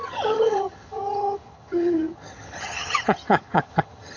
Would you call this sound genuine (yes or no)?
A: no